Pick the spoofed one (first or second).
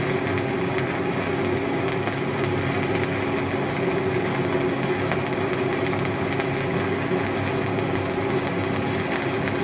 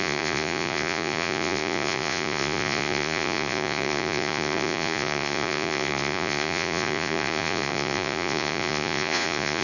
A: second